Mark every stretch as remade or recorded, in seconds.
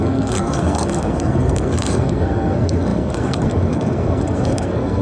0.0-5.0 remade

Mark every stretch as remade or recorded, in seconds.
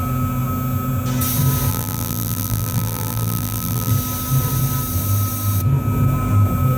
0.0-1.7 recorded; 1.7-3.9 remade; 3.9-6.8 recorded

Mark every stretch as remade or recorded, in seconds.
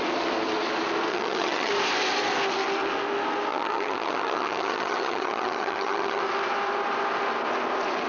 0.0-1.1 recorded; 1.1-1.7 remade; 1.7-3.5 recorded; 3.5-6.2 remade; 6.2-8.1 recorded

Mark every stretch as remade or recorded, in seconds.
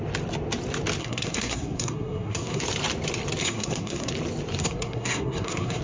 0.0-1.0 recorded; 1.0-2.6 remade; 2.6-3.4 recorded; 3.4-4.1 remade; 4.1-4.6 recorded; 4.6-5.8 remade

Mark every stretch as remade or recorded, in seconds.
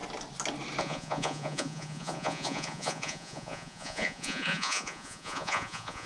0.0-0.8 recorded; 0.8-6.1 remade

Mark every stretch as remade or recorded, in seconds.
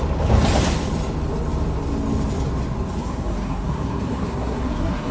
0.0-3.0 recorded; 3.0-5.1 remade